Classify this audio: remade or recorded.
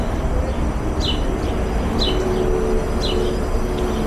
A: recorded